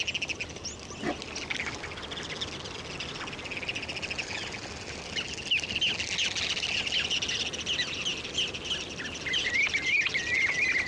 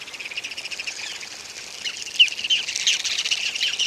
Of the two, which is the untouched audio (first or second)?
first